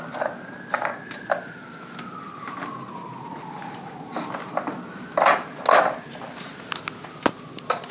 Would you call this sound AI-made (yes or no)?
no